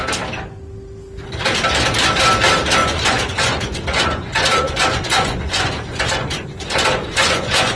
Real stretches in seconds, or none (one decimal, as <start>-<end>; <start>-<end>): 0.0-2.8